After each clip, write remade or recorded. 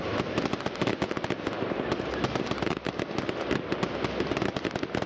recorded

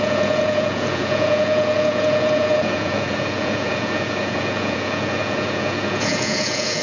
remade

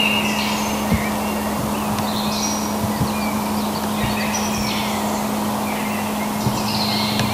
recorded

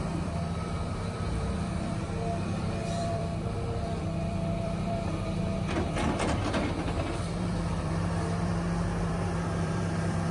remade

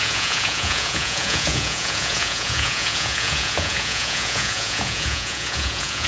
remade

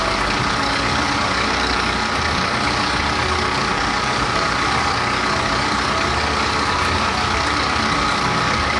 remade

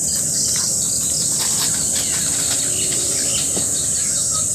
recorded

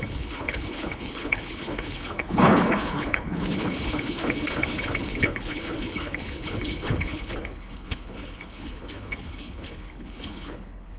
remade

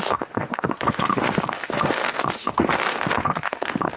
remade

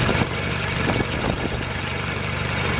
recorded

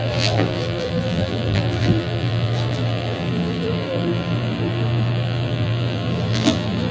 remade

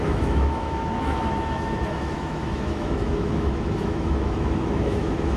remade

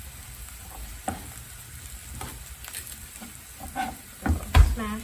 recorded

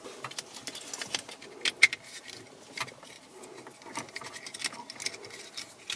recorded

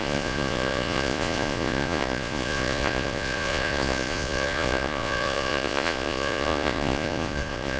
remade